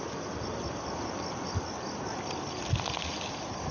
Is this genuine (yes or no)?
yes